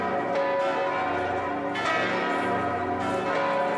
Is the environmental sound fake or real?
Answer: real